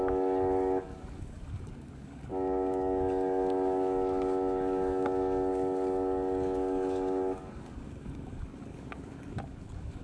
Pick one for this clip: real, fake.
fake